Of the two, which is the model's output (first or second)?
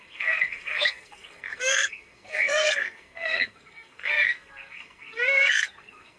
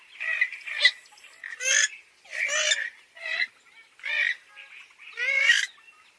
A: first